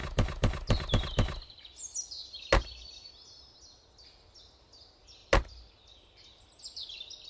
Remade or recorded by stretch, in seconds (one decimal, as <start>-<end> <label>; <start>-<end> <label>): 0.0-7.3 recorded